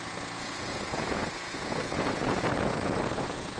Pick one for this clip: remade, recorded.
remade